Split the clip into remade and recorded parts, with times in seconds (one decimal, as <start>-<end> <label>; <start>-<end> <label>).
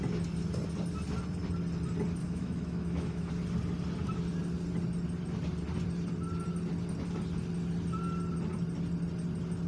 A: 0.0-2.2 recorded; 2.2-3.3 remade; 3.3-9.7 recorded